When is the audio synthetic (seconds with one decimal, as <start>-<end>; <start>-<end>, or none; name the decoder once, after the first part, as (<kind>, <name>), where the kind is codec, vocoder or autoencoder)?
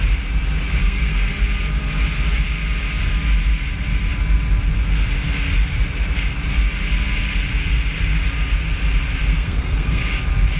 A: 0.8-1.3 (codec, SNAC); 9.2-10.0